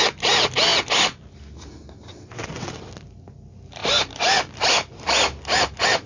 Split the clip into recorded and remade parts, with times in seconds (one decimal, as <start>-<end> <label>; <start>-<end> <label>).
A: 0.0-2.1 recorded; 2.1-2.9 remade; 2.9-6.1 recorded